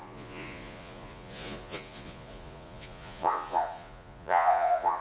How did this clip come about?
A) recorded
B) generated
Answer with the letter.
B